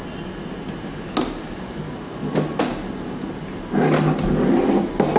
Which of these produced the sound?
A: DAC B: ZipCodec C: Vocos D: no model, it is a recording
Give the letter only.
D